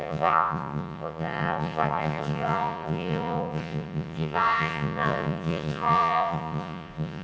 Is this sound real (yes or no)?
no